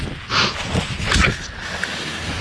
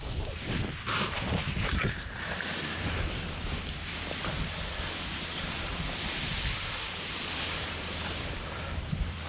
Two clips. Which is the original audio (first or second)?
first